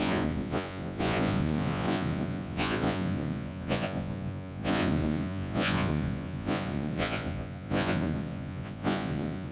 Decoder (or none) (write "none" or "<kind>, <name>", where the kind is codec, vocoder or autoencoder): vocoder, Vocos